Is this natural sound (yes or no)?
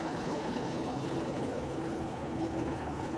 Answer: no